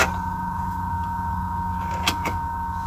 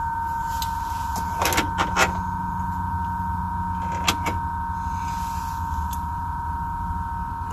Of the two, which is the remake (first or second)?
first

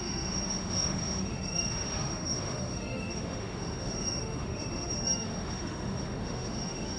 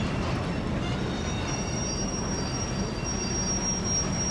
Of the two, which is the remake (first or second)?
first